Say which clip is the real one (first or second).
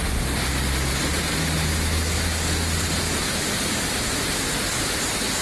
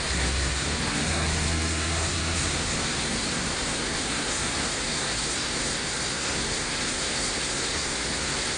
first